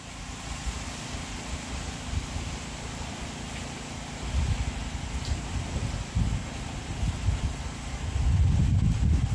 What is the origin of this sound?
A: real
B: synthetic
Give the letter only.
A